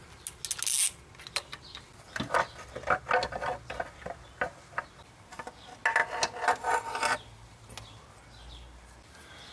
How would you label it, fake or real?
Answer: real